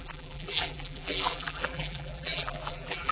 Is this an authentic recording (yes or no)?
no